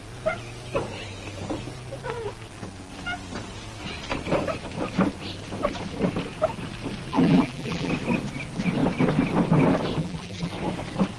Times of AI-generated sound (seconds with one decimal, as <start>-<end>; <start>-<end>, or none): 7.1-7.9; 10.0-10.5